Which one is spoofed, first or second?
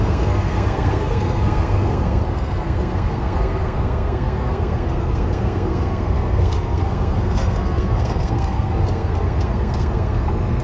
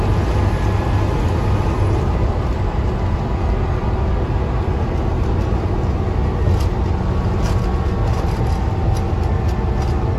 first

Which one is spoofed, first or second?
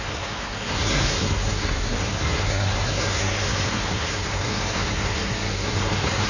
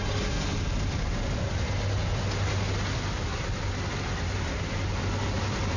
first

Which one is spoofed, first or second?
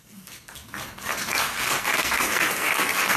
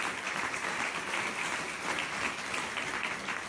first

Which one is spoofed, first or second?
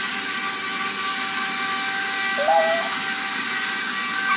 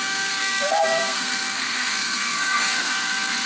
second